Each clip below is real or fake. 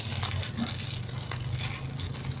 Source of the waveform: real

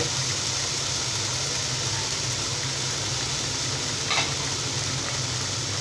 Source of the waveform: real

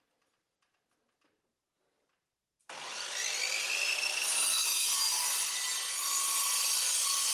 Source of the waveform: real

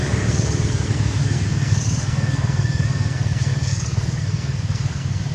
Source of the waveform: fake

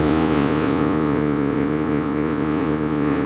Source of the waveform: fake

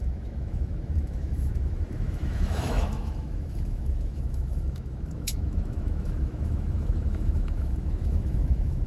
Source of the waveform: fake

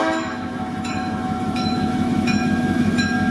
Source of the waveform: fake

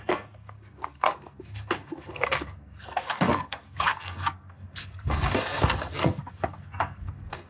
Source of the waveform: fake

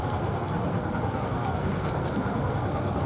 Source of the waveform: fake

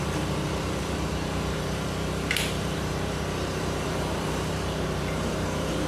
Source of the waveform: fake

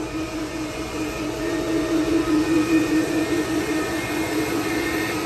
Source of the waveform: fake